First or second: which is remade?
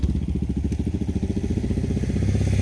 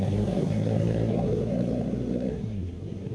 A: second